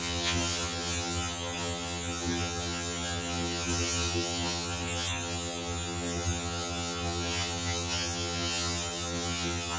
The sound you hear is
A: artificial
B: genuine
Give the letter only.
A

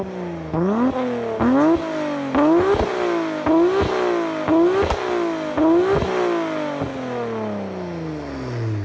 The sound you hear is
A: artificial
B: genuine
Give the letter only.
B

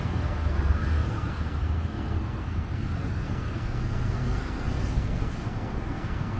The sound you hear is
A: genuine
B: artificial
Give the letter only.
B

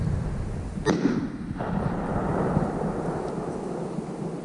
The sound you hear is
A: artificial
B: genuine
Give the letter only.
B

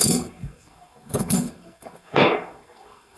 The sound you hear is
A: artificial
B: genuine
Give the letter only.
A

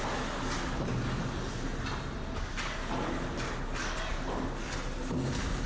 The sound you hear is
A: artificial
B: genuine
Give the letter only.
B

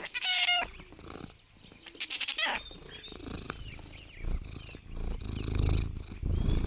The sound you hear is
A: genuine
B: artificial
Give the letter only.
A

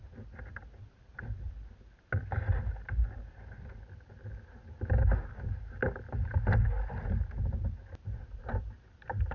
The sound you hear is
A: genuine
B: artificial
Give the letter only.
A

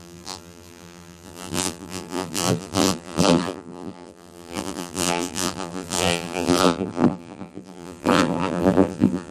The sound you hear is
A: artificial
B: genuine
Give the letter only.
A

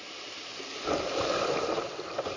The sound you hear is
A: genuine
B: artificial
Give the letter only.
A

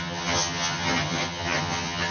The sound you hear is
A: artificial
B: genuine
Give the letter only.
A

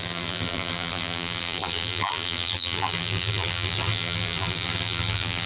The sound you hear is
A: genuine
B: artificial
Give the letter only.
B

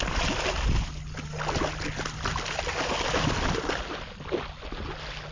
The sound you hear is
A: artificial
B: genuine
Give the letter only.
B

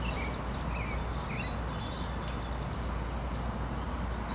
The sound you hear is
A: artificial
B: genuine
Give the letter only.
B